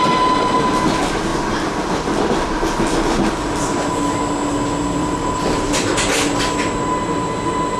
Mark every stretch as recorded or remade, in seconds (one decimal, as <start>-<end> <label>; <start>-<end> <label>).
0.0-5.0 recorded; 5.0-5.7 remade; 5.7-7.8 recorded